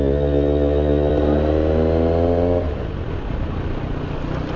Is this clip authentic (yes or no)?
yes